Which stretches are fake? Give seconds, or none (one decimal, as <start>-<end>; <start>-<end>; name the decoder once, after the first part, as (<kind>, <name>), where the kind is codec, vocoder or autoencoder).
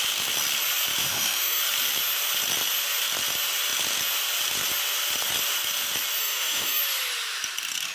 1.0-1.6 (autoencoder, DAC-VAE); 6.2-6.8